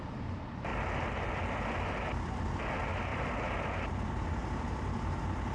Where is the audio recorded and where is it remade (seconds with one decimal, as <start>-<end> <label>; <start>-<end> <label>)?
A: 0.0-0.7 remade; 0.7-2.3 recorded; 2.3-5.5 remade